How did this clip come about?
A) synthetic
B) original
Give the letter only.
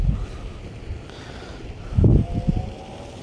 B